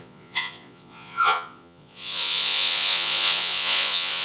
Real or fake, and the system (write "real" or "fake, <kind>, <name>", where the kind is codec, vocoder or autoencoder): fake, vocoder, Vocos